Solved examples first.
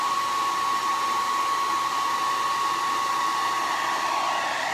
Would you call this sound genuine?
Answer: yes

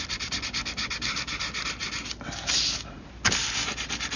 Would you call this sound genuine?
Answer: yes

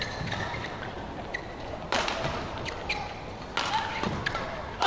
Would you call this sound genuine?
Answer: yes